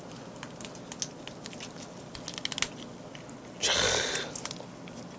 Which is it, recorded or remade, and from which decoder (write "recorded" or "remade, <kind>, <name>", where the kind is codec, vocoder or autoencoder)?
recorded